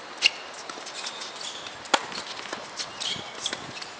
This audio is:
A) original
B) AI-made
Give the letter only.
A